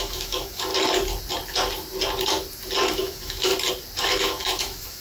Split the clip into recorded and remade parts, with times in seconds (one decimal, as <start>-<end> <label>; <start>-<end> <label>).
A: 0.0-0.7 remade; 0.7-2.9 recorded; 2.9-3.5 remade; 3.5-4.0 recorded; 4.0-5.0 remade